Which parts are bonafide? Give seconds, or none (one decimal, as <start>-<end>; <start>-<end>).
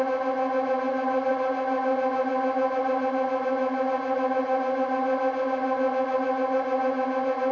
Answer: 0.0-7.5